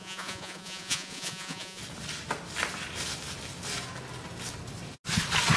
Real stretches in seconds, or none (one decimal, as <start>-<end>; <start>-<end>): 1.8-5.6